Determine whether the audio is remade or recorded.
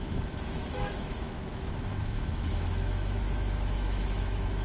remade